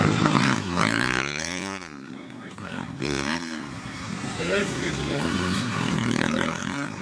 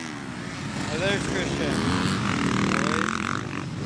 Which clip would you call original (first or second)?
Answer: second